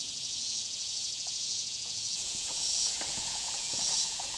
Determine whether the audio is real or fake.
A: fake